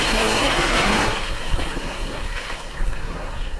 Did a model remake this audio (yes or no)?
yes